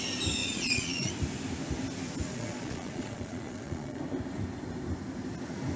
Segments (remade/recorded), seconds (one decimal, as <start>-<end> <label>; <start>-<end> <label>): 0.0-0.4 recorded; 0.4-1.1 remade; 1.1-2.3 recorded; 2.3-4.0 remade; 4.0-5.8 recorded